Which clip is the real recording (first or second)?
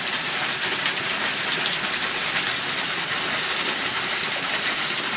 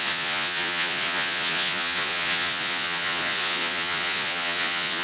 first